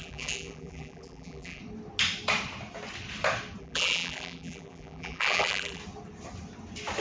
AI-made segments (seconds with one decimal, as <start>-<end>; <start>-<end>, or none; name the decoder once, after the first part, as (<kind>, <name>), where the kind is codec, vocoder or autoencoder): 0.0-1.6 (vocoder, BigVGAN v2); 3.6-5.8